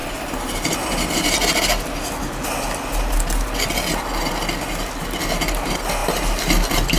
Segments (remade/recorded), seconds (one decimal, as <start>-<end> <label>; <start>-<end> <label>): 0.0-1.3 remade; 1.3-7.0 recorded